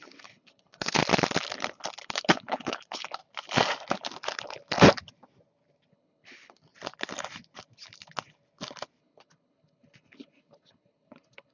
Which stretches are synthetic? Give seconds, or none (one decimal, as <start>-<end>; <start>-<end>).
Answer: 0.0-1.0; 2.0-3.2; 5.9-6.7; 9.0-11.5